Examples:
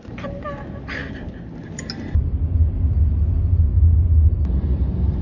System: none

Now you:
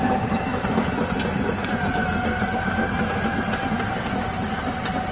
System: none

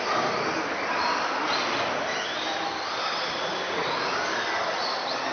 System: none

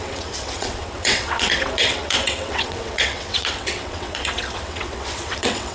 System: vocoder, WaveNeXt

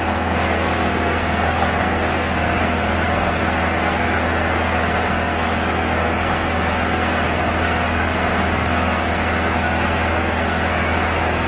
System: codec, SNAC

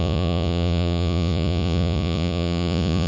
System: vocoder, Vocos